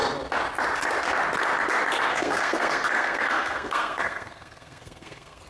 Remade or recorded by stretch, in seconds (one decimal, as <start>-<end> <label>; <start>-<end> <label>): 0.0-2.1 recorded; 2.1-5.5 remade